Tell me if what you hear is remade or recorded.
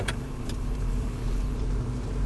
remade